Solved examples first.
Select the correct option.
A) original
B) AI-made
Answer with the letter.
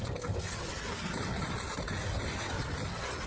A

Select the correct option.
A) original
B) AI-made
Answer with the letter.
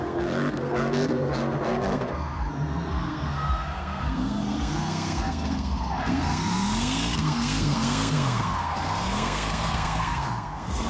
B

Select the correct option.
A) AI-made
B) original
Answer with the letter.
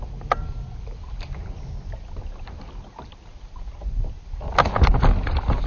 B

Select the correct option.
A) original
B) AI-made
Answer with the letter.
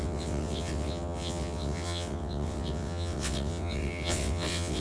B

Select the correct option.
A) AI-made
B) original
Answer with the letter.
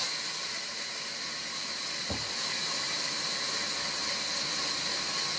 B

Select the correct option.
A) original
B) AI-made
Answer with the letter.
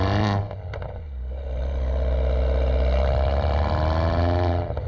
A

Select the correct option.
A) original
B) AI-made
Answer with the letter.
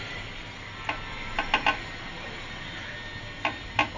A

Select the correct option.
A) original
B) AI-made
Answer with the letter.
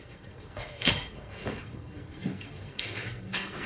B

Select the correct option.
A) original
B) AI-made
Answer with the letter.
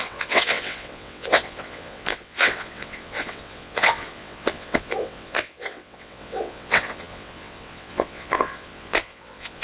B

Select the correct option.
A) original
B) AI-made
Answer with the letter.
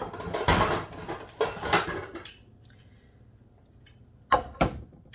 A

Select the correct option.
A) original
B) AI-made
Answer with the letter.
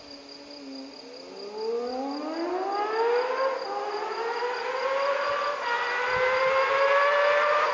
A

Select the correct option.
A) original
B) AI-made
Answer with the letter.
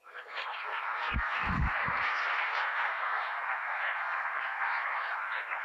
B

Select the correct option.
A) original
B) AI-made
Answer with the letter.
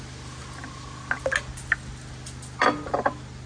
A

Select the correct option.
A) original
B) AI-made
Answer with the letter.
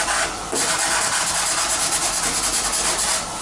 A